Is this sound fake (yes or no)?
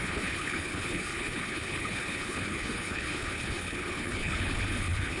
yes